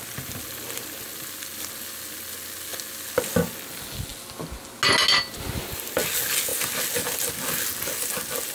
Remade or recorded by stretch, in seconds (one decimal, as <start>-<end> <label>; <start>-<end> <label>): 0.0-8.5 recorded